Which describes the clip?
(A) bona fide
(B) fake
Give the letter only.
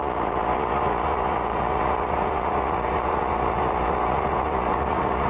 B